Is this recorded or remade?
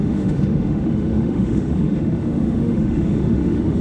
remade